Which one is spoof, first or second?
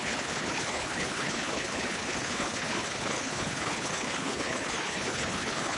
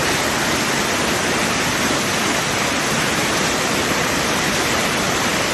first